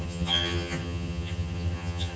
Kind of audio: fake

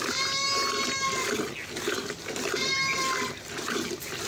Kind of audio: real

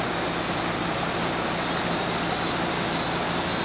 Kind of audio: real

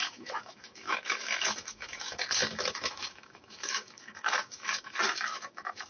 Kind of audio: fake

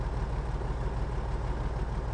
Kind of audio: real